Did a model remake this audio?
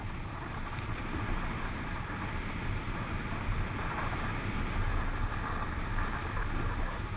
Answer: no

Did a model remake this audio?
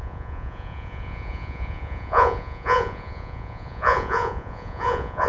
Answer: yes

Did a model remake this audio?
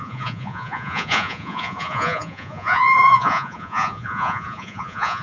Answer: yes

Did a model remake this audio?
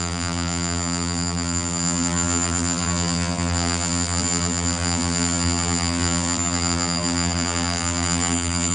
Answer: yes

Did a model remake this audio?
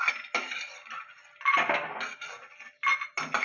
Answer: no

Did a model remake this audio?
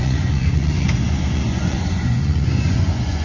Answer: yes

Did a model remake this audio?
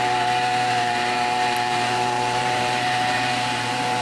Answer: yes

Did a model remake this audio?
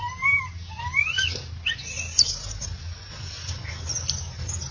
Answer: no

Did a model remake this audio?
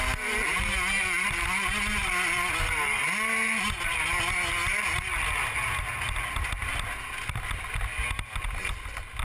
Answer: no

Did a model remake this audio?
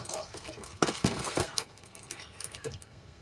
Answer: yes